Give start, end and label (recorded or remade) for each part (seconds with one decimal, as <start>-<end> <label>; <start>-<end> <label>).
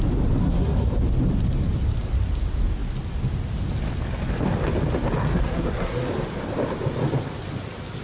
0.0-0.4 recorded; 0.4-1.0 remade; 1.0-5.2 recorded; 5.2-6.1 remade; 6.1-8.0 recorded